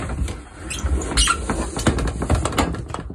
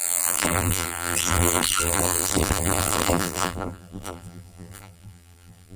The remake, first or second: second